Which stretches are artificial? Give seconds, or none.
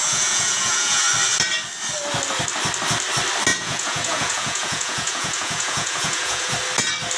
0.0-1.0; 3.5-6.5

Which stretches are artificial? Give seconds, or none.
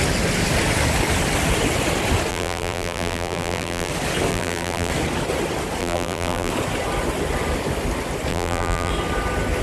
2.3-3.9; 4.3-4.9; 5.8-6.5; 8.3-8.9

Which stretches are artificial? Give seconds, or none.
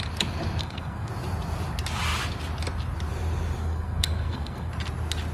0.6-1.1; 3.6-4.7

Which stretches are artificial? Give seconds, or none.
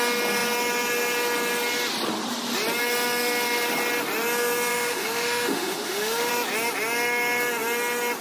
4.7-6.3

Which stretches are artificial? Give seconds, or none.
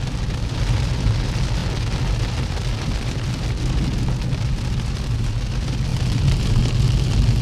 none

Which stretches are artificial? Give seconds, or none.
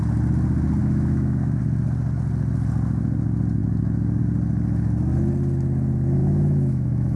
0.8-1.6; 6.2-7.2